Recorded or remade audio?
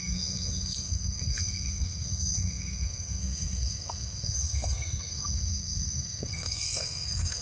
remade